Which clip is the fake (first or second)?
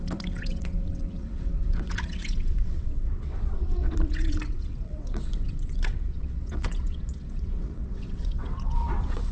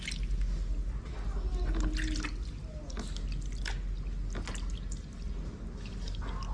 first